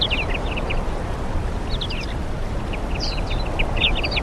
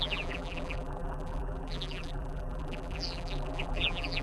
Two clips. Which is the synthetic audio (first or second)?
second